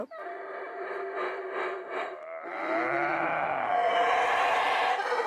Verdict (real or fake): fake